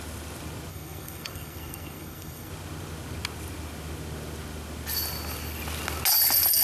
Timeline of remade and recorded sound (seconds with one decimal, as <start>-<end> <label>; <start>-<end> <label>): 0.0-0.7 recorded; 0.7-2.5 remade; 2.5-6.6 recorded